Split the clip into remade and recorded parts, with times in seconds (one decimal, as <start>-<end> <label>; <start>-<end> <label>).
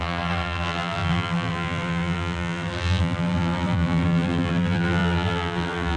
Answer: 0.0-6.0 remade